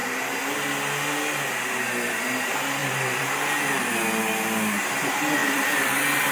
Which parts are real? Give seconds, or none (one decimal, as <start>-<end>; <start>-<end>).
0.0-2.8; 3.6-5.4